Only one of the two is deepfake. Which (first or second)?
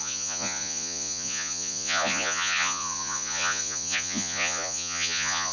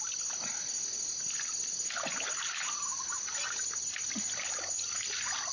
first